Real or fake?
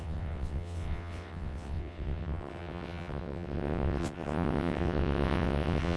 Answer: fake